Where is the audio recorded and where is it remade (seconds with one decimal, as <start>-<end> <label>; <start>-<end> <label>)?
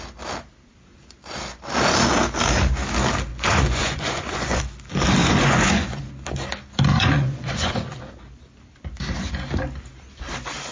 0.0-3.3 recorded; 3.3-4.6 remade; 4.6-5.2 recorded; 5.2-6.1 remade; 6.1-6.9 recorded; 6.9-8.0 remade; 8.0-10.7 recorded